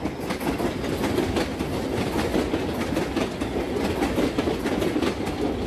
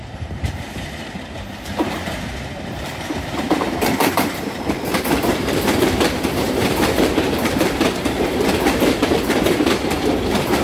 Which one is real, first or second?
first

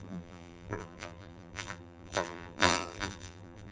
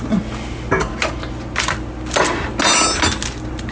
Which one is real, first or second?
second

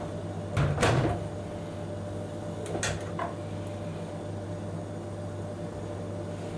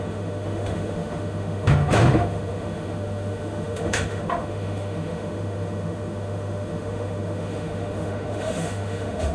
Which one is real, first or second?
first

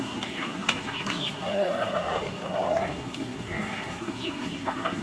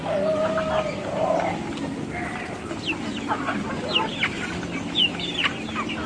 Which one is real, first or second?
second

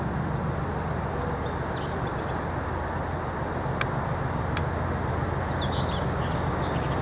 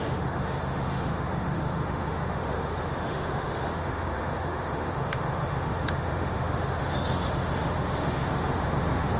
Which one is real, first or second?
first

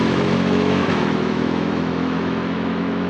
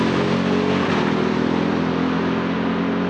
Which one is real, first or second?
second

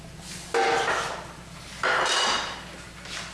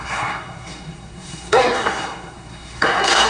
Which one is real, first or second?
first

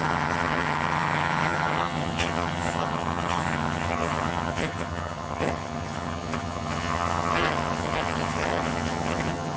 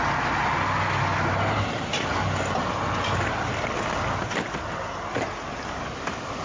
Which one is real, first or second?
second